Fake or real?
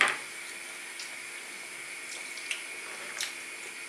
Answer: real